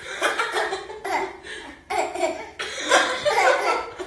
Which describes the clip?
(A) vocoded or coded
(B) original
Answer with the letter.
B